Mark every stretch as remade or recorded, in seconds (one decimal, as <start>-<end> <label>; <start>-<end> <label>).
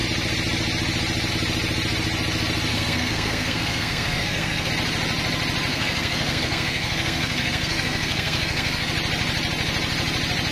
0.0-2.7 recorded; 2.7-4.7 remade; 4.7-5.7 recorded; 5.7-8.9 remade; 8.9-10.5 recorded